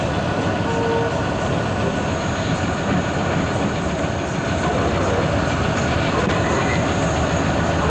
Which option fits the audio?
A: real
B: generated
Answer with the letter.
A